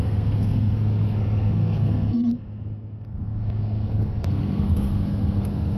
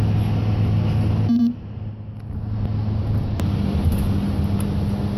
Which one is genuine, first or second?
second